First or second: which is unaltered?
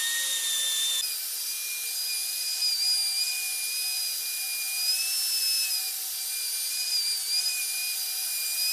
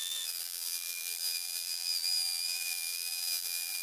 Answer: first